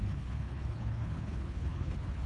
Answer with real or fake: fake